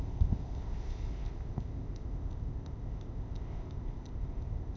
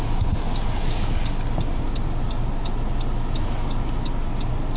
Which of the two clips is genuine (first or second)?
second